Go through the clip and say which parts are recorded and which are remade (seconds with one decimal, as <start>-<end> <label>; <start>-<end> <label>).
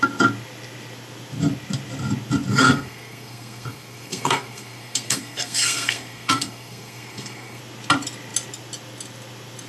0.0-2.5 recorded; 2.5-7.6 remade; 7.6-9.7 recorded